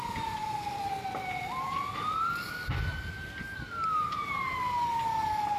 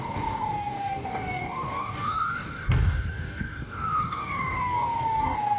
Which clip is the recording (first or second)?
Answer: first